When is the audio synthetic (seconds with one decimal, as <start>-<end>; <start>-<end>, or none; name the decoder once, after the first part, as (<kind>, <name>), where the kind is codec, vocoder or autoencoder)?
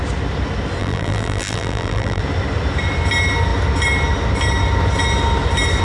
0.8-2.2 (vocoder, BigVGAN v2)